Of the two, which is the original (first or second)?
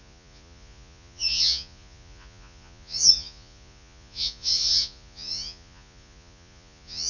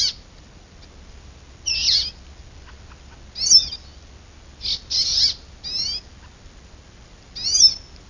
second